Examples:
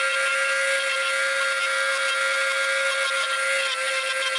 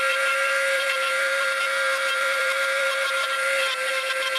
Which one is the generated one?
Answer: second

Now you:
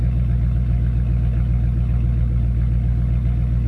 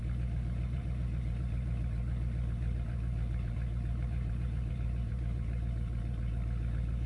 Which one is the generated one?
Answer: second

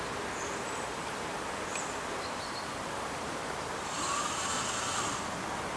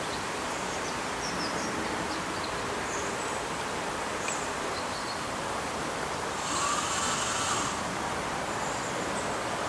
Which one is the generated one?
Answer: second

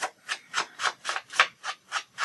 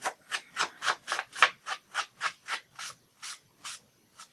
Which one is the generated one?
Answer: first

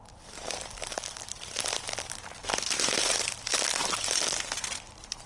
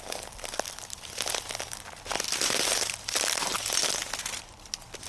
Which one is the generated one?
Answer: first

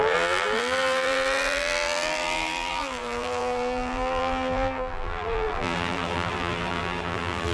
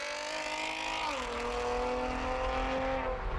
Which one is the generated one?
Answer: first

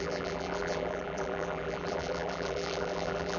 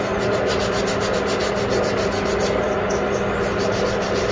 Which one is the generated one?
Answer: first